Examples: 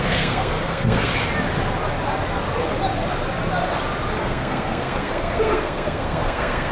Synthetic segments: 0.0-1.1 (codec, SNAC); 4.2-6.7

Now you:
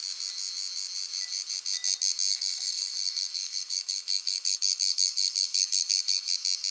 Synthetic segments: 2.3-6.3 (codec, SNAC)